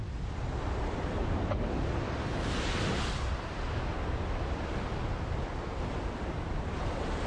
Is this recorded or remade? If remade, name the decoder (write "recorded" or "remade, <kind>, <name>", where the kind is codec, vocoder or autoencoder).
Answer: recorded